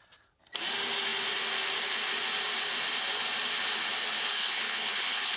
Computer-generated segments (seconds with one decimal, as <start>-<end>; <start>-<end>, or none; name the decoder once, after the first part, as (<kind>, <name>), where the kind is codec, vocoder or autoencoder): 4.3-5.4 (codec, HILCodec)